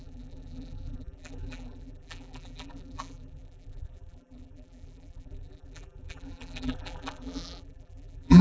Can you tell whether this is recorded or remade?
remade